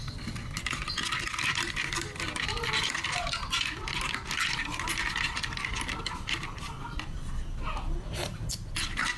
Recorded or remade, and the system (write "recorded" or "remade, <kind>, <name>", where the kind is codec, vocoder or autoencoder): recorded